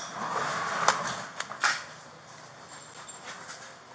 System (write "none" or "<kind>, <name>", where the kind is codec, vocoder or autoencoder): none